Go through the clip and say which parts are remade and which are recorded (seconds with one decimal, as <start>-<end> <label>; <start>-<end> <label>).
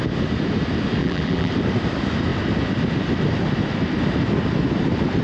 0.0-1.0 recorded; 1.0-1.5 remade; 1.5-5.2 recorded